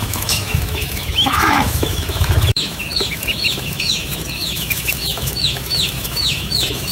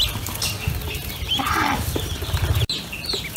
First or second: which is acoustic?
second